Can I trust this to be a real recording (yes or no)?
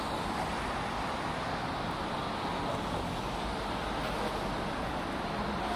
yes